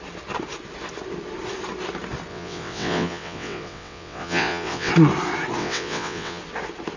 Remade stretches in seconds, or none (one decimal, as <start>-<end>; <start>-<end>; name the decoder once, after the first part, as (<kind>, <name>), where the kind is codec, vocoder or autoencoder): 2.3-4.9 (vocoder, WaveNeXt); 5.6-6.4